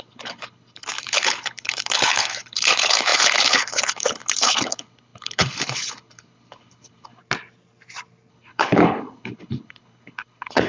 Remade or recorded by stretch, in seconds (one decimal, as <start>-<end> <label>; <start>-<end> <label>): 0.0-7.2 remade; 7.2-8.3 recorded; 8.3-10.7 remade